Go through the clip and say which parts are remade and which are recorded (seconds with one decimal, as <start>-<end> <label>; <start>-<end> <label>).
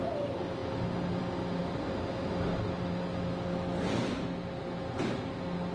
0.0-5.7 recorded